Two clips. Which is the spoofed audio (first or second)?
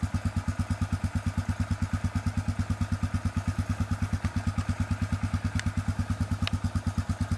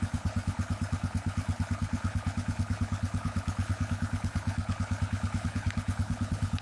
second